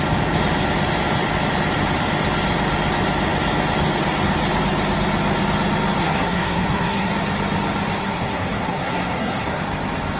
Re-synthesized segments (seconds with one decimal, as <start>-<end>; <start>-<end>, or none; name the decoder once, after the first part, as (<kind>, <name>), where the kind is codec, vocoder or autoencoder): 6.0-7.1 (codec, SNAC); 8.0-9.6